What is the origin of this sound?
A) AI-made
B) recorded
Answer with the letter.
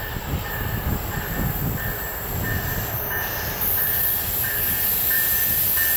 B